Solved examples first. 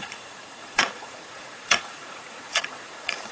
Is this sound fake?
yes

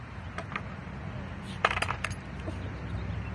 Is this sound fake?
no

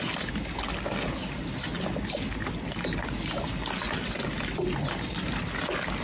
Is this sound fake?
no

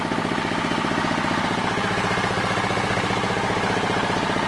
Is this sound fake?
no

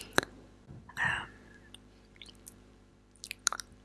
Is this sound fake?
yes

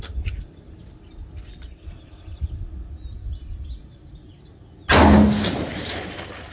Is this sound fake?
no